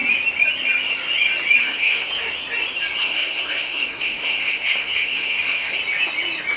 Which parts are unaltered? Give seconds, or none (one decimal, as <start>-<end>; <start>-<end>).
0.0-1.6; 2.1-3.0; 5.8-6.6